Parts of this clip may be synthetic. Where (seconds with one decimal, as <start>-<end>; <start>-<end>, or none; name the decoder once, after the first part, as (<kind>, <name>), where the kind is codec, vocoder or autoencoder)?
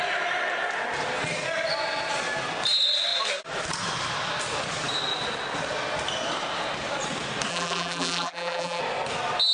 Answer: 7.5-8.8 (vocoder, BigVGAN v2)